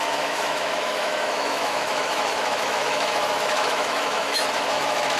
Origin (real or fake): fake